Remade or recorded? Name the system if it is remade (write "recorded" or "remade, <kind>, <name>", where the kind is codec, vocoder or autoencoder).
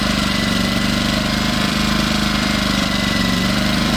remade, vocoder, BigVGAN v2